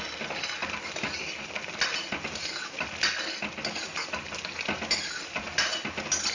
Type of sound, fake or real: real